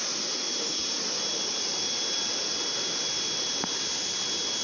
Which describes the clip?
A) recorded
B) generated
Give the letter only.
A